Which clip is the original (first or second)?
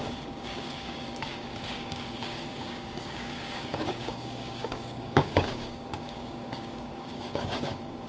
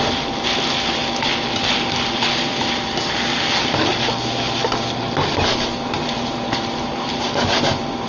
second